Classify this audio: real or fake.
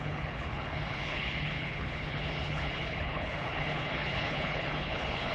fake